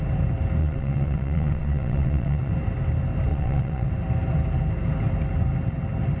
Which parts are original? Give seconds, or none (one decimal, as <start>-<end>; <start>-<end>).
0.0-0.6; 2.5-3.3; 3.9-6.2